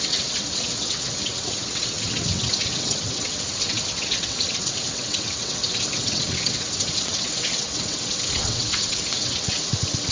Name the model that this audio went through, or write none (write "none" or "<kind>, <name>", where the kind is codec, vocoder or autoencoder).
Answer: vocoder, WaveNeXt